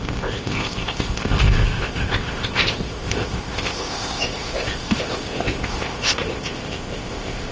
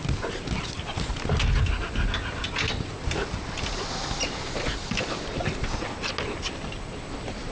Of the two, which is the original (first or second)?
second